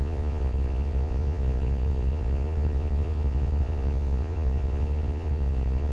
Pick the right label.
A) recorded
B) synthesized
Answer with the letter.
B